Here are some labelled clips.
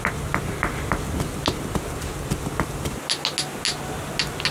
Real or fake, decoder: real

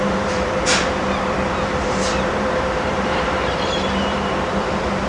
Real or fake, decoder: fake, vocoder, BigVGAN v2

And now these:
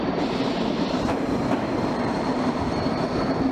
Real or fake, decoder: fake, vocoder, BigVGAN v2